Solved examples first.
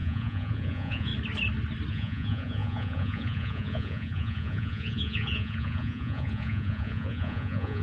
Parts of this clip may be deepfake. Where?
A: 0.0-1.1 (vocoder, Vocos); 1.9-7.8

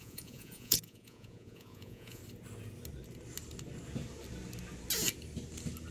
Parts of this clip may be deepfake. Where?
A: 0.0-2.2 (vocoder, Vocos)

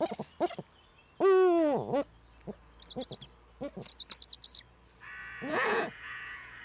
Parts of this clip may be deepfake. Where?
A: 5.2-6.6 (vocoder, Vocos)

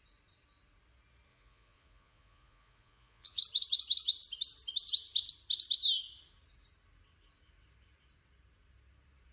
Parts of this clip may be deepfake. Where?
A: 1.3-3.4 (vocoder, Vocos)

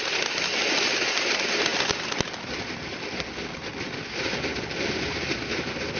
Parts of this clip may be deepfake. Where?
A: none

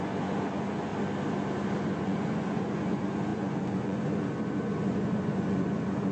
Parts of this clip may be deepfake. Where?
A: 0.0-0.9 (vocoder, Vocos); 1.8-6.1

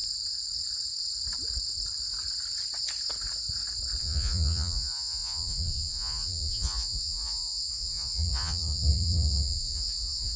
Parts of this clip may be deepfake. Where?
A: 4.0-10.4 (vocoder, Vocos)

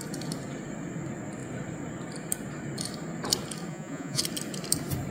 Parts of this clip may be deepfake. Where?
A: 3.7-4.2 (vocoder, Vocos)